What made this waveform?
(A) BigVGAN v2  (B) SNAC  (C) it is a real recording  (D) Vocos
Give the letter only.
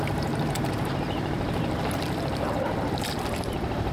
A